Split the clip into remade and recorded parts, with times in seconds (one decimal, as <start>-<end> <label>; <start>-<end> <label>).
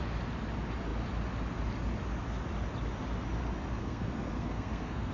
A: 0.0-3.8 recorded; 3.8-5.1 remade